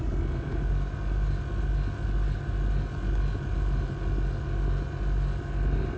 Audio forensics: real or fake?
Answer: real